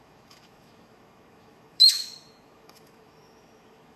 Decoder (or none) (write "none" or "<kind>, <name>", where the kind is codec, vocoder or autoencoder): autoencoder, DAC-VAE